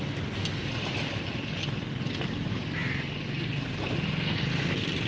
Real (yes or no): yes